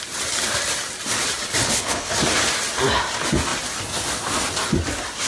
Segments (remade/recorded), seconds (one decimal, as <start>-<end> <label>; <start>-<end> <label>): 0.0-1.6 recorded; 1.6-2.2 remade; 2.2-5.3 recorded